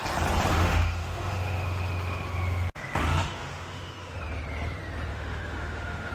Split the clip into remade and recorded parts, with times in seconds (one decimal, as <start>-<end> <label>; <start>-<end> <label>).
0.0-0.5 recorded; 0.5-4.2 remade; 4.2-5.1 recorded; 5.1-6.1 remade